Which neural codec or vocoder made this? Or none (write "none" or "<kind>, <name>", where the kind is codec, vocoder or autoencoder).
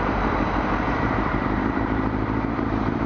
vocoder, BigVGAN v2